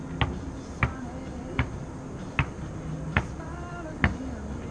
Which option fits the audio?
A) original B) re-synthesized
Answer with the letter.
A